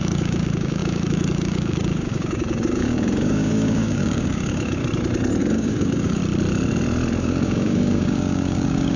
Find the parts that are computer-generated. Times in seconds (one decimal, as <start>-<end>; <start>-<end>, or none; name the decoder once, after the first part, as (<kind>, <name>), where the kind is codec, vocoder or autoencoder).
0.0-4.8 (codec, DAC); 5.4-6.2; 7.2-9.0